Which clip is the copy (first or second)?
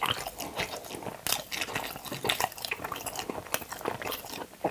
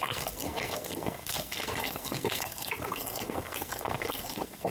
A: second